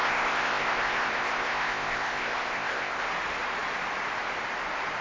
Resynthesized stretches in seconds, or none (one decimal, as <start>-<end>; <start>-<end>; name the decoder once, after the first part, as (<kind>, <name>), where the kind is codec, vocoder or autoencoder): 0.0-3.0 (codec, ZipCodec)